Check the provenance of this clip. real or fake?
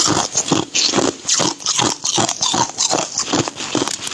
real